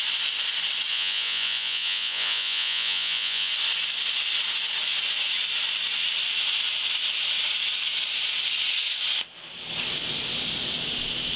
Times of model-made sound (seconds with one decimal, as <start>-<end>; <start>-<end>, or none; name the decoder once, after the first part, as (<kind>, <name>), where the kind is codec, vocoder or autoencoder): 0.9-3.5 (vocoder, Vocos)